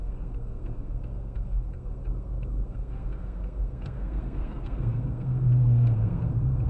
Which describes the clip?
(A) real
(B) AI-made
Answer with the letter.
B